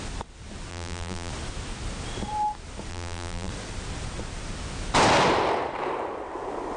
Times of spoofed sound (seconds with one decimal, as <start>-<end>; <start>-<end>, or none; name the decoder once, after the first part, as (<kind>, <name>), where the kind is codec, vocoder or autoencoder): 0.7-1.3 (vocoder, BigVGAN v2); 2.9-3.5